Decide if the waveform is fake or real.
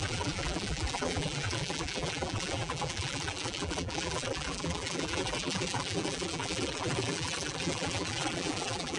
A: fake